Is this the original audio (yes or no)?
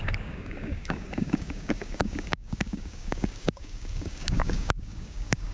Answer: no